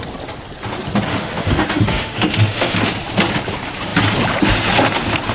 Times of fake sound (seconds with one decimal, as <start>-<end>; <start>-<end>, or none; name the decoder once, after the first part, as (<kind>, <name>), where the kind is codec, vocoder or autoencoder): 1.1-2.8 (autoencoder, DAC-VAE)